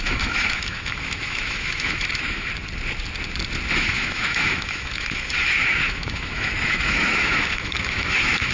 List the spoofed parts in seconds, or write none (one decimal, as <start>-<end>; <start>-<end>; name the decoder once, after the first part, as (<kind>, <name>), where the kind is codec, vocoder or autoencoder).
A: 0.0-2.5 (autoencoder, DAC-VAE); 3.7-8.5